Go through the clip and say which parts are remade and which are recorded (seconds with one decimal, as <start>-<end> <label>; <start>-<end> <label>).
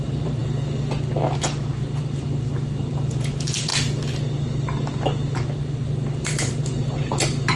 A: 0.0-0.4 remade; 0.4-2.0 recorded; 2.0-3.7 remade; 3.7-6.2 recorded; 6.2-7.6 remade